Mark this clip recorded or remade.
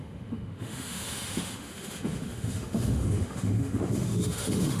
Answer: remade